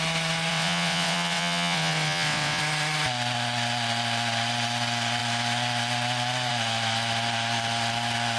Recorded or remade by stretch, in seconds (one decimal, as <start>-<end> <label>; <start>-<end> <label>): 0.0-0.5 recorded; 0.5-2.6 remade; 2.6-8.4 recorded